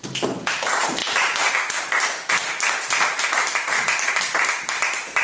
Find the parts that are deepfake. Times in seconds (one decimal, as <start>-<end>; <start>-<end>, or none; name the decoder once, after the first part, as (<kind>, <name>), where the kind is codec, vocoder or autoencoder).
none